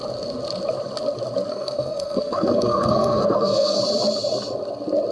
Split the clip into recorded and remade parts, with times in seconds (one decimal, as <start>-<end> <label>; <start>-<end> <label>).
0.0-1.5 recorded; 1.5-3.8 remade; 3.8-5.1 recorded